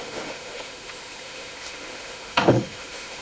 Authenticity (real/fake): fake